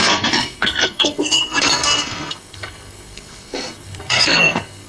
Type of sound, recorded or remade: remade